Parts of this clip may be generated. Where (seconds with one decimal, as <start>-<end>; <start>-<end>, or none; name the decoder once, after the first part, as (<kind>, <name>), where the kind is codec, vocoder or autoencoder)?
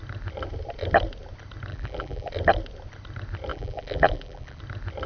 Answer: 1.7-2.3 (vocoder, BigVGAN v2); 3.5-4.6